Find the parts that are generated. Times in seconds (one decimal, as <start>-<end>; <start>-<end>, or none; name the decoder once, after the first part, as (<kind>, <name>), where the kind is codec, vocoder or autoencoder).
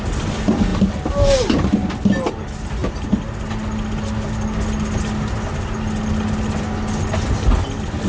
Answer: none